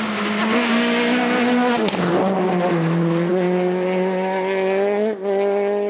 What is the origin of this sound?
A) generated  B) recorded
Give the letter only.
B